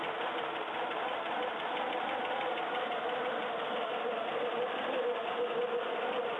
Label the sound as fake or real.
real